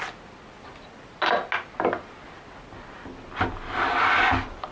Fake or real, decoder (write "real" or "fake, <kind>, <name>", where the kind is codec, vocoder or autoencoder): real